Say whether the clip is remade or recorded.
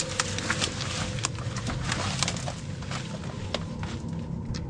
recorded